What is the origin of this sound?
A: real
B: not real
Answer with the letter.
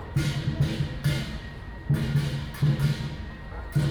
A